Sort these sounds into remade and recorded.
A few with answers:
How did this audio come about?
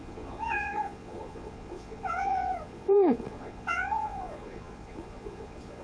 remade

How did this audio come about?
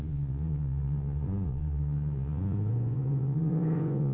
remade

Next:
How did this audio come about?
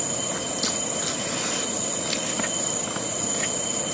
recorded